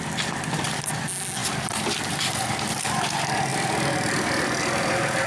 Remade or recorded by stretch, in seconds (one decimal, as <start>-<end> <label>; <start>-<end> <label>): 0.0-5.3 recorded